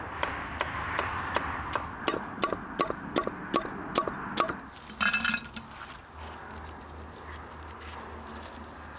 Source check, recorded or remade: recorded